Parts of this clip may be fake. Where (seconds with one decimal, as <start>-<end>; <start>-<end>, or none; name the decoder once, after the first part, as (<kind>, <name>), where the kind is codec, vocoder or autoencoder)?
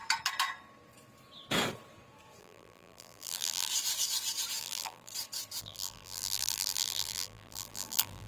2.4-3.7 (vocoder, BigVGAN v2); 4.6-5.1; 5.6-8.3